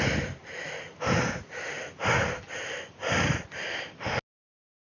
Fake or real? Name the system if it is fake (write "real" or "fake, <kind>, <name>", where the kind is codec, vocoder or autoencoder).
real